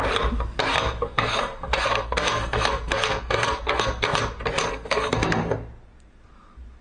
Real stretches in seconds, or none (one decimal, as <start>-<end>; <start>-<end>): 0.0-0.7; 4.2-4.7; 5.4-6.8